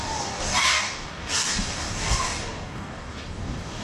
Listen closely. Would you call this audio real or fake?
fake